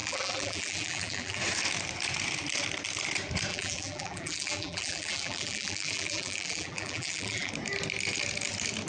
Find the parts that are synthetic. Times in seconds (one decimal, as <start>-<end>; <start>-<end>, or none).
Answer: 0.0-1.4; 3.5-7.5